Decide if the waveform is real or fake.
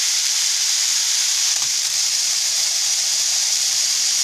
fake